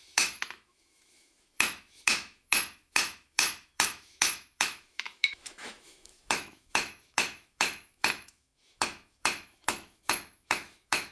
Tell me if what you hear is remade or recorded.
remade